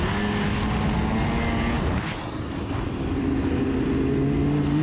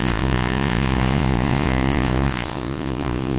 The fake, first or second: second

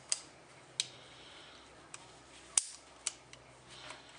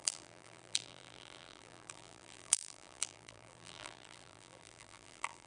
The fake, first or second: second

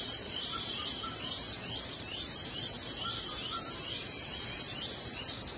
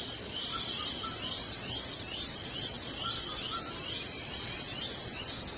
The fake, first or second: first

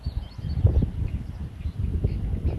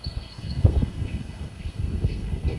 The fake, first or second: second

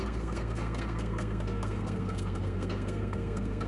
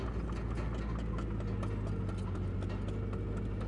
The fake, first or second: first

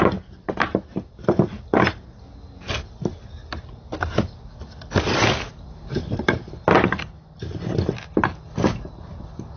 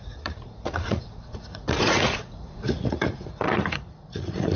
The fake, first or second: second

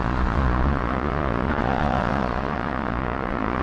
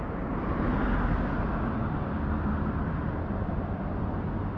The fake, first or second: first